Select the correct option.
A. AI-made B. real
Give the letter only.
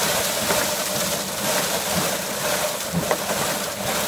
A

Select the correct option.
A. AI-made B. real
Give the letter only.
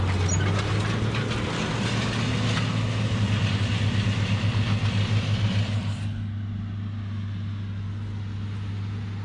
B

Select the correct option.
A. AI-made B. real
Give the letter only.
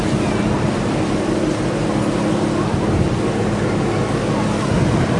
B